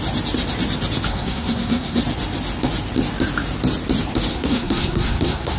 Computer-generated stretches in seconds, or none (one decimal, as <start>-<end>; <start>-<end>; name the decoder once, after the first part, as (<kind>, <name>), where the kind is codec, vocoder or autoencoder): 1.1-2.0 (codec, SNAC); 4.3-5.6